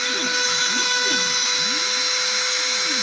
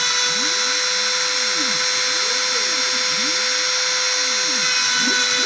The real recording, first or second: second